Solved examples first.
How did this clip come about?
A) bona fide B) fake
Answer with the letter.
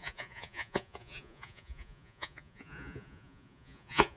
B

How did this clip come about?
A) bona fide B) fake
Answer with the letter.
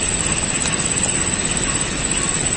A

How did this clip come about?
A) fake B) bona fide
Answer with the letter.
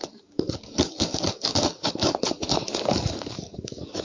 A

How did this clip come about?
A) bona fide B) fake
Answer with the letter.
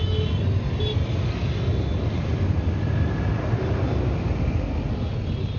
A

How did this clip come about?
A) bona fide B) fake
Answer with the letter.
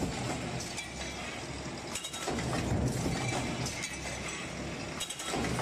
A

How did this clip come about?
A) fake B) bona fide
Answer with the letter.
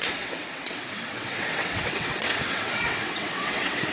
A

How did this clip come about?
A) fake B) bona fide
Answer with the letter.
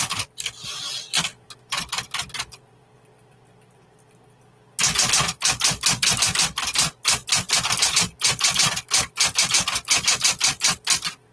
B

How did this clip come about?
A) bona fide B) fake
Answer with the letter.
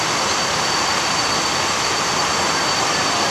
A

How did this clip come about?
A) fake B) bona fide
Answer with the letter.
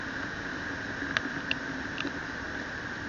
B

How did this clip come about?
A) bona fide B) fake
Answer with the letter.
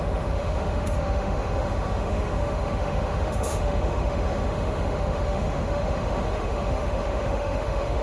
B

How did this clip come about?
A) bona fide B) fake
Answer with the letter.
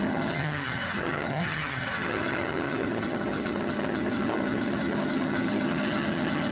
B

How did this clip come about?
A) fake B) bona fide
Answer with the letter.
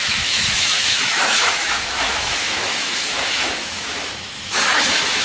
A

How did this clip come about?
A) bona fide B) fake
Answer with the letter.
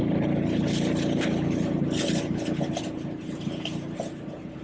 A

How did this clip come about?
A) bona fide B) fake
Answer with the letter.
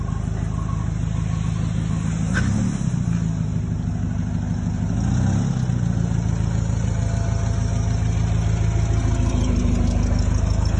A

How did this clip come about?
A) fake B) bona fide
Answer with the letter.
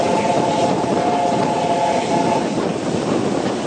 B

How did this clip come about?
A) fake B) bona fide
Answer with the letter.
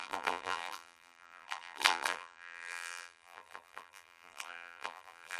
A